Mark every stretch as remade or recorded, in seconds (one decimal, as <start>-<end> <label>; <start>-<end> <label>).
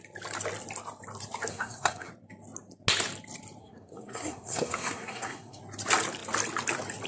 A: 0.0-1.5 recorded; 1.5-2.1 remade; 2.1-3.6 recorded; 3.6-5.6 remade; 5.6-7.1 recorded